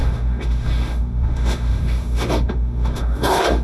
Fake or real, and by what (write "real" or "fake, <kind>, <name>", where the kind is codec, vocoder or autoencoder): fake, autoencoder, DAC-VAE